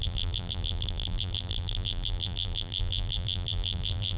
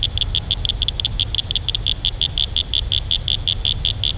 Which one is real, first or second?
second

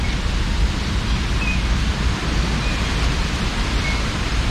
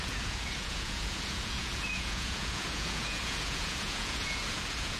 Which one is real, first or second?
first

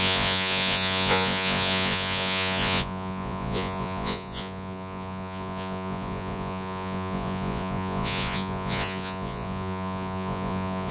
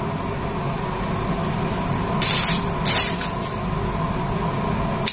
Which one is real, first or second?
second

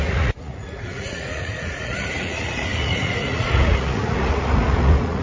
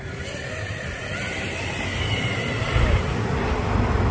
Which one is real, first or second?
second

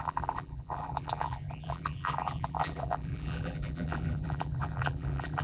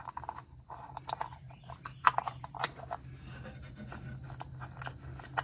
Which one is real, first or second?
second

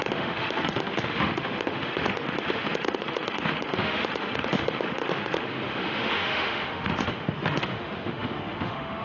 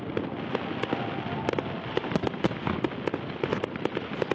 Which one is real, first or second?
second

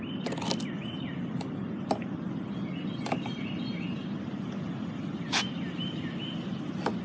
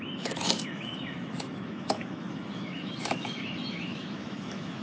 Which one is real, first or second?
first